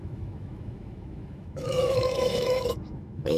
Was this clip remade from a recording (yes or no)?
yes